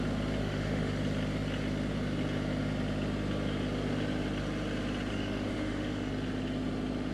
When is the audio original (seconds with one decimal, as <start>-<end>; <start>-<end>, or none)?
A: 0.0-0.4; 0.9-5.1; 6.1-7.1